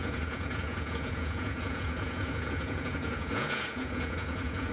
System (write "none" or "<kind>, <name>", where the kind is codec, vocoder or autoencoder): vocoder, Vocos